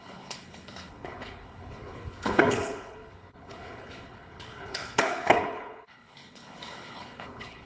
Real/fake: fake